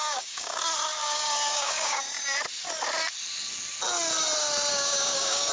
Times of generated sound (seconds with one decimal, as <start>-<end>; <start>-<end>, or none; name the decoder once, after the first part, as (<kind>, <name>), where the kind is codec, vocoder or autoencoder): 0.0-0.6 (codec, DAC); 1.0-2.0; 4.7-5.5